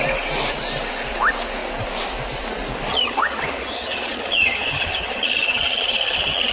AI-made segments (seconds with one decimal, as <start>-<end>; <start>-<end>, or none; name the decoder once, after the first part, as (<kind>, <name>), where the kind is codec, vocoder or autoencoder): 2.9-6.5 (vocoder, HiFi-GAN)